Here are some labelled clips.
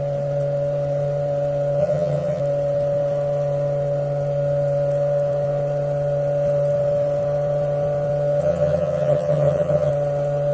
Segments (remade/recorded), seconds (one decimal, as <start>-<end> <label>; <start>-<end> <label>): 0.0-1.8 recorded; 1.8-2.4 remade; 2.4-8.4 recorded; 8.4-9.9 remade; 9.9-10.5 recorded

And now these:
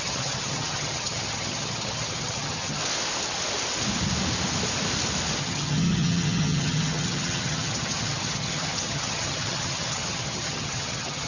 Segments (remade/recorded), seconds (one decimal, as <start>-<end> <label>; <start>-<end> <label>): 0.0-2.8 remade; 2.8-5.4 recorded; 5.4-11.3 remade

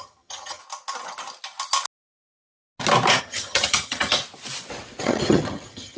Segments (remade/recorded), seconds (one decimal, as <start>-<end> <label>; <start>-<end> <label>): 0.0-0.6 remade; 0.6-3.2 recorded; 3.2-4.2 remade; 4.2-5.0 recorded; 5.0-6.0 remade

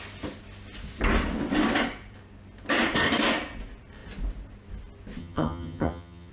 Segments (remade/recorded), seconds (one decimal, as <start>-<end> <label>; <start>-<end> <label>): 0.0-5.2 recorded; 5.2-6.3 remade